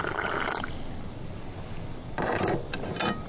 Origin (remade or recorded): recorded